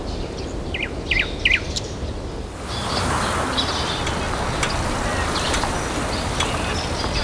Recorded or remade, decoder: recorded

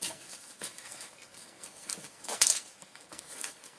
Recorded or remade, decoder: remade, codec, SNAC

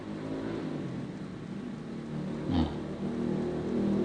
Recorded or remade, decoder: recorded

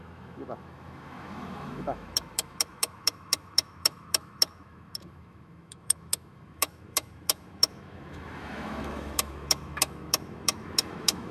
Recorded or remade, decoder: remade, autoencoder, DAC-VAE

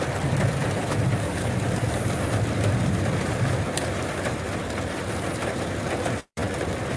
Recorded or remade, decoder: remade, vocoder, BigVGAN v2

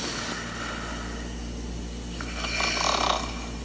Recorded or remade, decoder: recorded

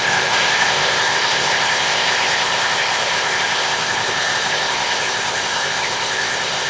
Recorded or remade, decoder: remade, codec, ZipCodec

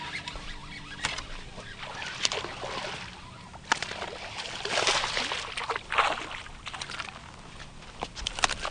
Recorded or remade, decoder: recorded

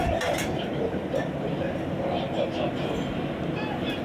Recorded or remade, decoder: recorded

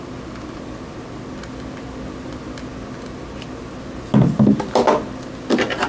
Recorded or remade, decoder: recorded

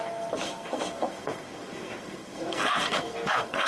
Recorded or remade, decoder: remade, codec, SNAC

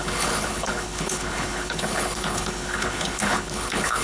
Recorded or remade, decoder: remade, codec, HILCodec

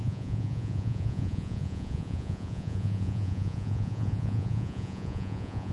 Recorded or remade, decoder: remade, vocoder, Vocos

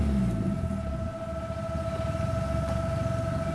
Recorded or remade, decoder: recorded